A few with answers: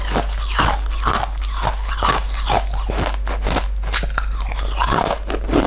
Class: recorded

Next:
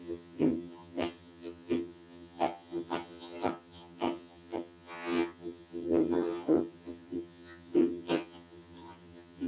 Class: remade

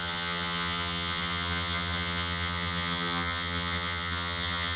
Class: remade